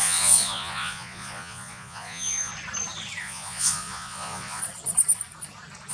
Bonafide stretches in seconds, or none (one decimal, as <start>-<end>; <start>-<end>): 2.5-3.2; 4.6-5.9